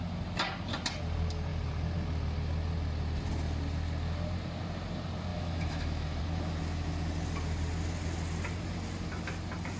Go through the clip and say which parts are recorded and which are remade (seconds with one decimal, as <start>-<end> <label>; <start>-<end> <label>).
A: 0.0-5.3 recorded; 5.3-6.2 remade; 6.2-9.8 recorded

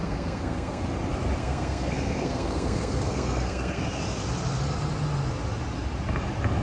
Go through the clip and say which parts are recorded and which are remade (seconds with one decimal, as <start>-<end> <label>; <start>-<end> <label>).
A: 0.0-0.8 remade; 0.8-1.4 recorded; 1.4-3.8 remade; 3.8-6.6 recorded

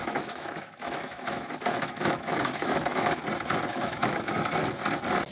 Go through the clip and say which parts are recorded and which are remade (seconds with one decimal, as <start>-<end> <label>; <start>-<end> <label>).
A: 0.0-3.2 remade; 3.2-3.7 recorded; 3.7-4.5 remade; 4.5-5.3 recorded

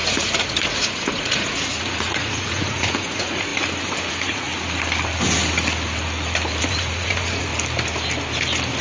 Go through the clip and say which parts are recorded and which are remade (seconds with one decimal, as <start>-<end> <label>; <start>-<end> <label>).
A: 0.0-3.5 remade; 3.5-4.1 recorded; 4.1-4.5 remade; 4.5-6.6 recorded; 6.6-7.5 remade; 7.5-8.8 recorded

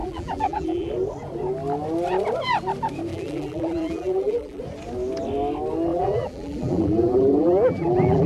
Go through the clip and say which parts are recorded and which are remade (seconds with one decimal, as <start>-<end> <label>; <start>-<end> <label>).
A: 0.0-0.9 remade; 0.9-3.1 recorded; 3.1-4.6 remade; 4.6-5.9 recorded; 5.9-8.3 remade